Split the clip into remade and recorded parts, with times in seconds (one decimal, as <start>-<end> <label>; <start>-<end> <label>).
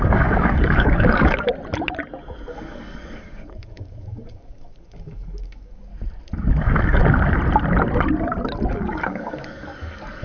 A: 0.0-1.5 remade; 1.5-2.5 recorded; 2.5-5.9 remade; 5.9-6.5 recorded; 6.5-7.0 remade; 7.0-8.7 recorded; 8.7-10.2 remade